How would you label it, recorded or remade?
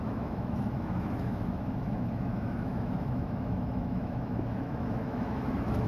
remade